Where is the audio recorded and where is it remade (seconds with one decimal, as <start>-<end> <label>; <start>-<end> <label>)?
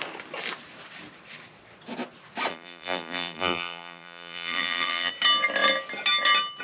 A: 0.0-2.5 recorded; 2.5-5.1 remade; 5.1-6.6 recorded